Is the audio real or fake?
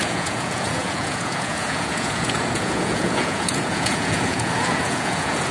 fake